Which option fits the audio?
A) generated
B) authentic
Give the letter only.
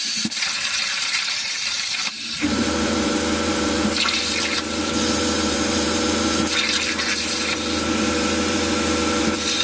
A